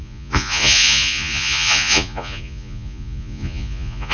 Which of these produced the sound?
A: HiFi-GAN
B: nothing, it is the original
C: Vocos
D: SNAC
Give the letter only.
C